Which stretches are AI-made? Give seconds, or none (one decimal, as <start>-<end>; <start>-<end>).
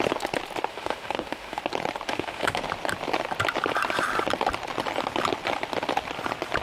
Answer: 0.7-1.6; 2.1-2.6